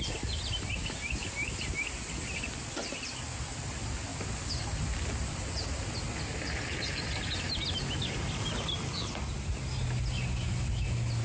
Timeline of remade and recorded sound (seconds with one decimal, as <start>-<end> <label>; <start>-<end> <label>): 0.0-11.2 recorded